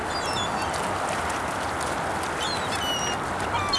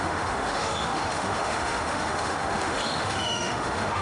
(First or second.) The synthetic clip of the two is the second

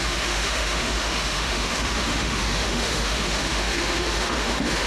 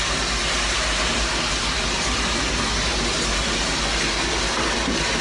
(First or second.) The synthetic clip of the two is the first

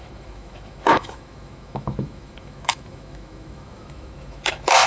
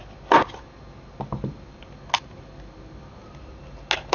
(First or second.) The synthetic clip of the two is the first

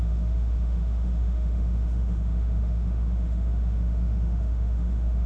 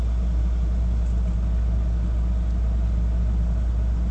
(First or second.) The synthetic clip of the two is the first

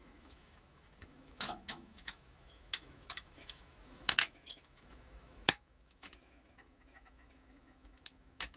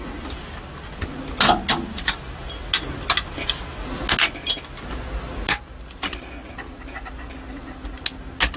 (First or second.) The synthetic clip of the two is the first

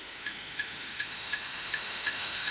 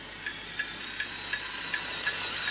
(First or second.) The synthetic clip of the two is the first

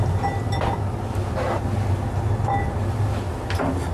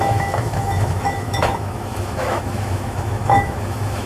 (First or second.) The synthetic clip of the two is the second